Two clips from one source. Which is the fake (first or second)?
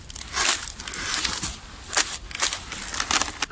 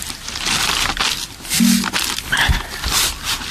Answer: second